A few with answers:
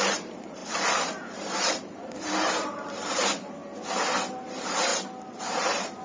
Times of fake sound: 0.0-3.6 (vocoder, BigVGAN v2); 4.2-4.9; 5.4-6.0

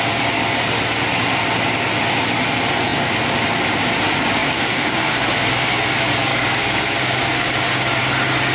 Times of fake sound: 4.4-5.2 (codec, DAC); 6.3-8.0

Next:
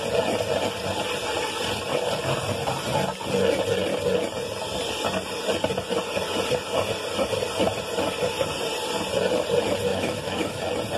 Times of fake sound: 9.9-10.6 (autoencoder, DAC-VAE)

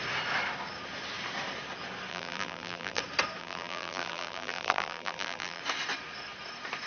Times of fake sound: 2.1-3.0 (vocoder, BigVGAN v2); 3.4-5.6

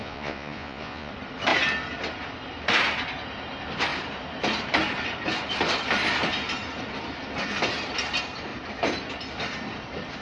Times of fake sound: 0.0-1.1 (vocoder, Vocos)

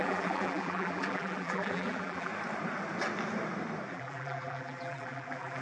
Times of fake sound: 0.0-2.3 (vocoder, BigVGAN v2); 3.9-5.6